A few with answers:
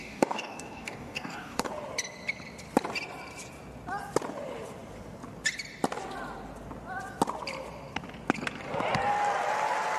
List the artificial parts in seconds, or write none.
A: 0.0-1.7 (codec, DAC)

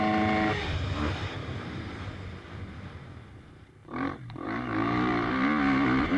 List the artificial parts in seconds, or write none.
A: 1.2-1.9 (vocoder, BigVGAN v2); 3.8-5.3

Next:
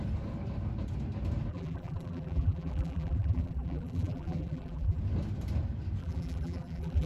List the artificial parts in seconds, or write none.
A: 1.5-5.0 (vocoder, BigVGAN v2); 6.0-7.1

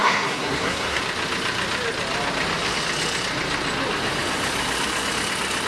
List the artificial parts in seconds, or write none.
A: 0.0-1.0 (codec, SNAC)

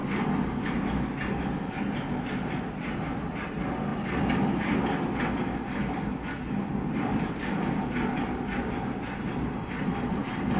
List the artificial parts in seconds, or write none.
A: 3.9-5.2 (vocoder, BigVGAN v2); 5.8-6.3